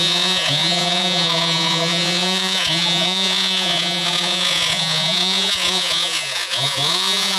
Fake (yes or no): yes